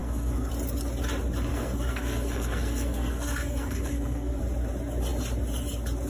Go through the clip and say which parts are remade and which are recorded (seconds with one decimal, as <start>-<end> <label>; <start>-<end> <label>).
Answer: 0.0-0.5 remade; 0.5-1.5 recorded; 1.5-4.4 remade; 4.4-6.1 recorded